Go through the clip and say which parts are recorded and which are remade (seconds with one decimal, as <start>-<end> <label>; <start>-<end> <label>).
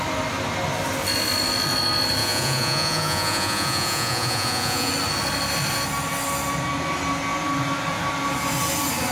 0.0-2.2 recorded; 2.2-4.9 remade; 4.9-9.1 recorded